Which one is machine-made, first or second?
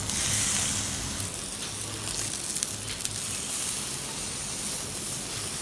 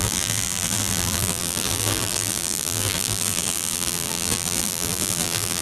second